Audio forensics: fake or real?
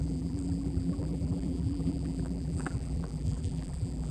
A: fake